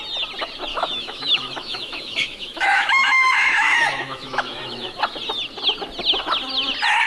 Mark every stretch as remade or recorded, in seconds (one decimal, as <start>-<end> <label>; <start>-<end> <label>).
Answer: 0.0-0.7 recorded; 0.7-5.0 remade; 5.0-7.1 recorded